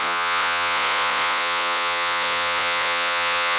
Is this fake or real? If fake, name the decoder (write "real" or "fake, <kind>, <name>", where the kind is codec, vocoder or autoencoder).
fake, vocoder, Vocos